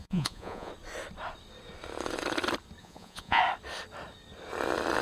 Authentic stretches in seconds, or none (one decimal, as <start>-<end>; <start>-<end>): 0.7-2.8; 3.4-5.0